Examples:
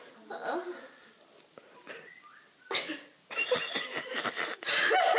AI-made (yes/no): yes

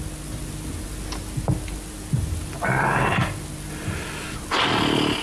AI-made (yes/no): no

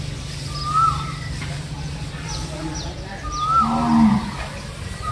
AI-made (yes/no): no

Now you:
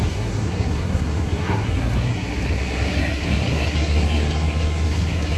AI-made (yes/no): yes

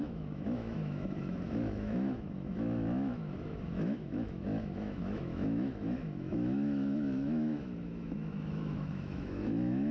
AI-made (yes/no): yes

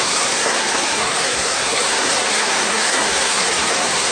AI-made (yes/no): yes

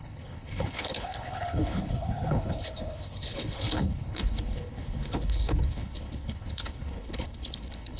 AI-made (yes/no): yes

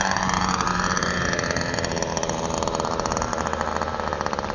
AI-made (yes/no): no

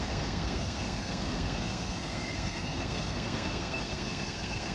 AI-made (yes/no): yes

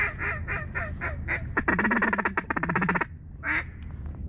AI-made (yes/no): no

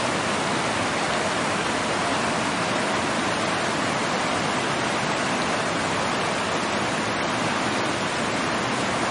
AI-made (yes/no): no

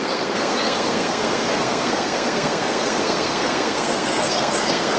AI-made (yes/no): yes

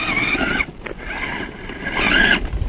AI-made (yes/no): no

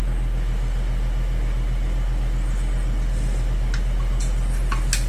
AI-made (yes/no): no